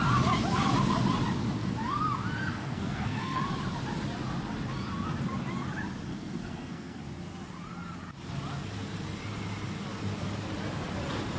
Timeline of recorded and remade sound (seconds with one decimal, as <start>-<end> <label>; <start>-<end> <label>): 0.0-2.5 recorded; 2.5-3.4 remade; 3.4-6.1 recorded; 6.1-7.0 remade; 7.0-11.4 recorded